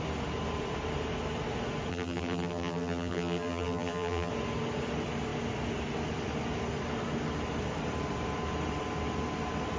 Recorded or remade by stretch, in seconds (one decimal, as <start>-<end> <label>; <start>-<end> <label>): 0.0-1.9 recorded; 1.9-4.3 remade; 4.3-9.8 recorded